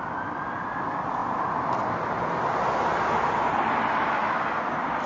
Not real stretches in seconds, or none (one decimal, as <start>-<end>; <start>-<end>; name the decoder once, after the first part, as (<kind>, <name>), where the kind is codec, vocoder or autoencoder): none